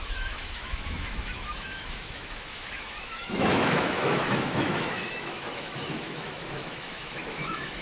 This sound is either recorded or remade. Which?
remade